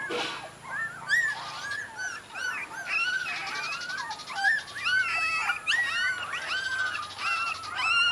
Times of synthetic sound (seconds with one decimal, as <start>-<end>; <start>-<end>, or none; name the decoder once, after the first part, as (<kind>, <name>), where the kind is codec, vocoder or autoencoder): none